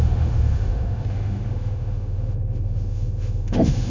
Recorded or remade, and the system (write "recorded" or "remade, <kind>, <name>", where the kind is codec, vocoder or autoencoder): remade, autoencoder, DAC-VAE